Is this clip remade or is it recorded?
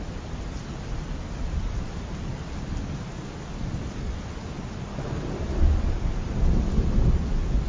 recorded